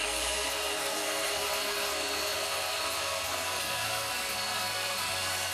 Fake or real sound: fake